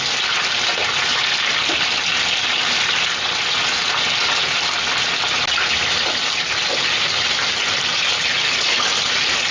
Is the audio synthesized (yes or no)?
no